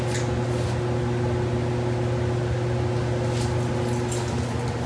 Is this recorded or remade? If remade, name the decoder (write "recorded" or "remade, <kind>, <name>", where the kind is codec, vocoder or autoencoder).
recorded